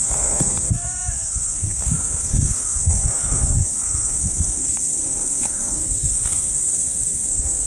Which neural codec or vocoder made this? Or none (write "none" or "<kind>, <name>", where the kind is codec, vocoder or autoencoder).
codec, SNAC